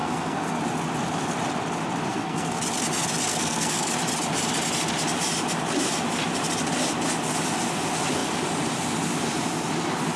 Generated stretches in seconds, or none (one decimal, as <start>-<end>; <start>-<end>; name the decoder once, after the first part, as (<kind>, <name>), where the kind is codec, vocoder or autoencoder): 0.0-0.6 (codec, SNAC); 2.1-2.6; 3.3-3.9